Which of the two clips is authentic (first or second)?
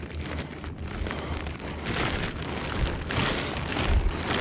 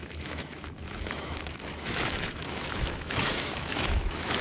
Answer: first